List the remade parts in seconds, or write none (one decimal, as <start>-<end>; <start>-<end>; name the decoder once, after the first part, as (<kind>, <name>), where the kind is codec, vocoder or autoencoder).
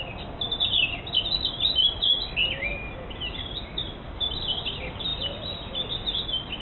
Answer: none